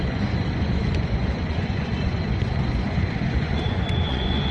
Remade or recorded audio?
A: remade